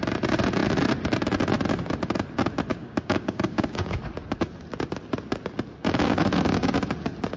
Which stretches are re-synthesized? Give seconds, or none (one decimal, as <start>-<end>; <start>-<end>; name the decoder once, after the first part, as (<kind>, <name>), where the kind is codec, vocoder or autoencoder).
2.7-4.0 (codec, DAC); 5.8-6.7